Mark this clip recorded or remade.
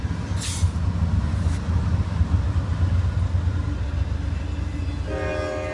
recorded